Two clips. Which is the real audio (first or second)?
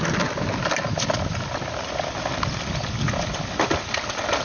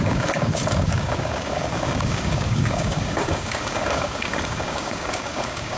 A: first